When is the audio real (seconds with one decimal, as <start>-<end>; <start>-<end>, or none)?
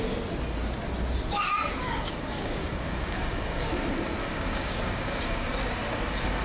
0.0-1.7; 3.8-4.2; 5.5-6.4